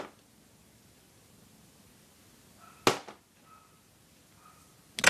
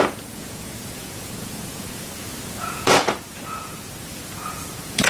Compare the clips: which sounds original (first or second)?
first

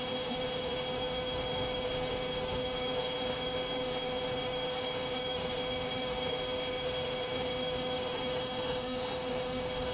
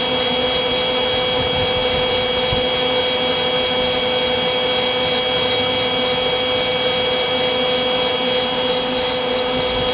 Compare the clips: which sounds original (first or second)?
second